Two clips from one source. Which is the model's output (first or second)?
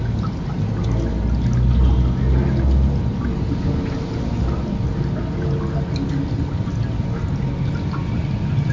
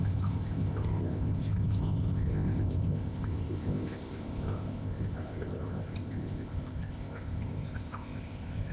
second